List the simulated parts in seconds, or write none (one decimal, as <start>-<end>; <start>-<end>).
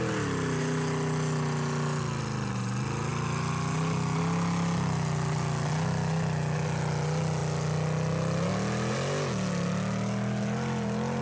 none